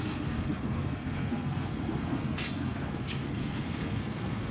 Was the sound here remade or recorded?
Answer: remade